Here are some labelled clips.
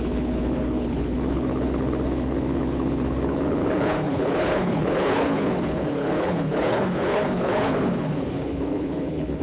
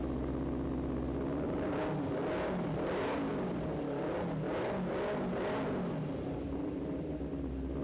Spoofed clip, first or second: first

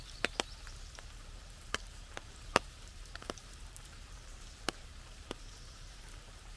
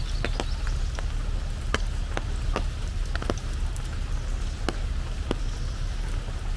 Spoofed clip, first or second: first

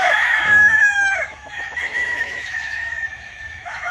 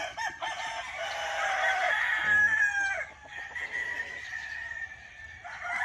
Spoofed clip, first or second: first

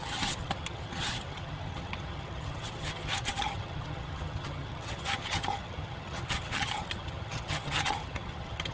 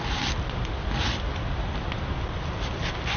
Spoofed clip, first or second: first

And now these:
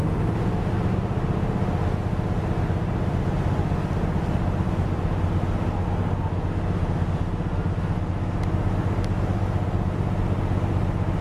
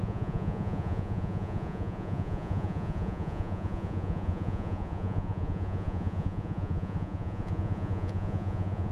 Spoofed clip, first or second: second